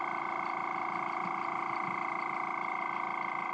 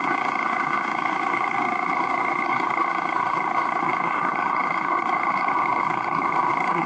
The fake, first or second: second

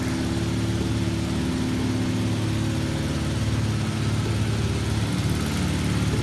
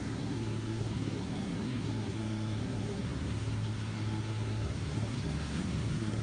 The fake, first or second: second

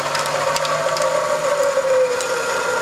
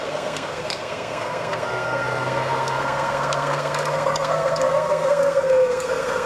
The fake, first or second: second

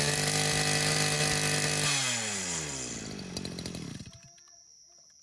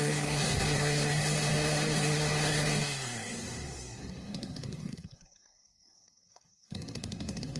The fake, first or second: second